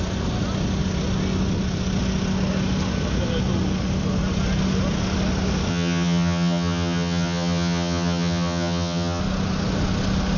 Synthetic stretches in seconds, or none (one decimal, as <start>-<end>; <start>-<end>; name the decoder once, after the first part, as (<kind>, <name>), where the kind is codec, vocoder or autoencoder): 5.7-9.2 (vocoder, HiFi-GAN)